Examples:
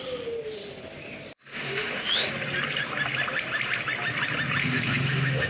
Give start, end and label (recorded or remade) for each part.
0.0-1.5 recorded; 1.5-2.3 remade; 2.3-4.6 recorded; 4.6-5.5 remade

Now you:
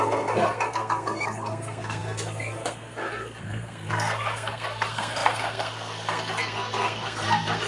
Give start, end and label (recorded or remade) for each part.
0.0-7.7 remade

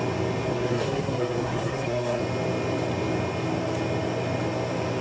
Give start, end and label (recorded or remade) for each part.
0.0-0.5 recorded; 0.5-2.2 remade; 2.2-5.0 recorded

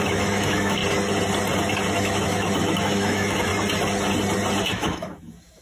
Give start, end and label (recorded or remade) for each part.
0.0-0.8 remade; 0.8-1.9 recorded; 1.9-3.5 remade; 3.5-4.6 recorded; 4.6-5.6 remade